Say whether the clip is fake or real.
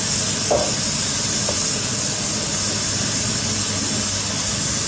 real